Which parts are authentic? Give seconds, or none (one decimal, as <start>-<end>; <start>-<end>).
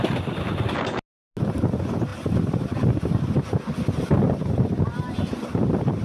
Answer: 0.0-6.0